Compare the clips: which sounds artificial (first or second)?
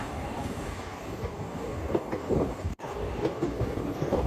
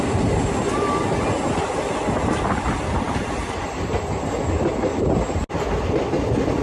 first